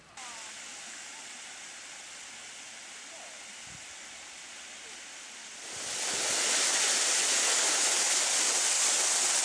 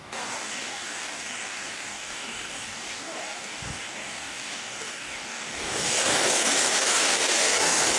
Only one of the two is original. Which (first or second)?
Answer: first